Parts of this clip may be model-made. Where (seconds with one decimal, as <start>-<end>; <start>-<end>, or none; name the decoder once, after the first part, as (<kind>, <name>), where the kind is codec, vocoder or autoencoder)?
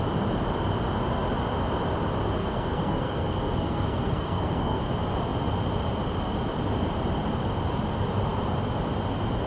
2.4-4.8 (codec, SNAC)